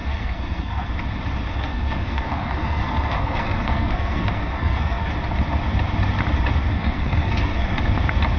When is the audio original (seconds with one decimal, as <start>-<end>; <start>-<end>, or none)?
0.9-1.5; 5.1-6.7; 7.8-8.4

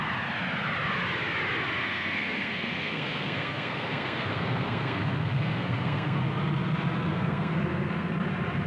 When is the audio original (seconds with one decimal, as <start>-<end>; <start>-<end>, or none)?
0.0-1.8; 6.2-7.1; 8.1-8.7

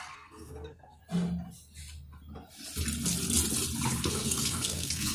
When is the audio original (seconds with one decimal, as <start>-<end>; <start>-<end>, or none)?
1.0-4.1

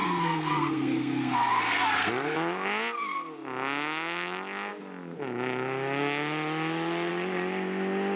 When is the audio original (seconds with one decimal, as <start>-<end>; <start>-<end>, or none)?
2.1-8.2

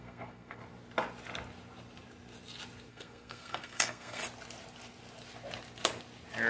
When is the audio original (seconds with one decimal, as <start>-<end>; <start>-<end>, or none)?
0.6-2.9; 4.2-6.5

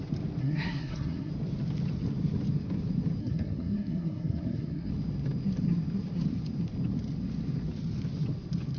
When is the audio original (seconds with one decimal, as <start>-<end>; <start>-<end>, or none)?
0.0-0.4; 1.3-3.2; 4.9-8.8

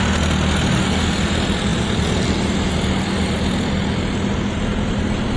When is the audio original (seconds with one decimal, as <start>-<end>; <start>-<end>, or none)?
0.0-5.4